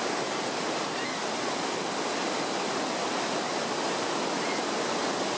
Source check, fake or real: real